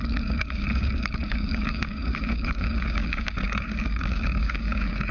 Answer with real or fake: fake